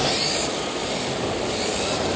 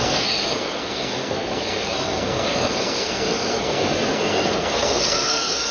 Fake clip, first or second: second